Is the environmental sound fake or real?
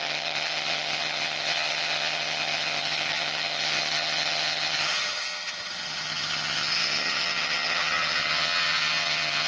fake